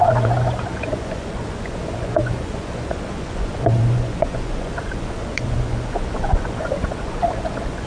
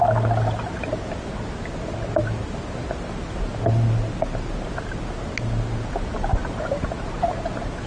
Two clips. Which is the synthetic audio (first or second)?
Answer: first